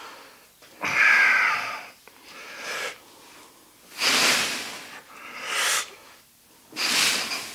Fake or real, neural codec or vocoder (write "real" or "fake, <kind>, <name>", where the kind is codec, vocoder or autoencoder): real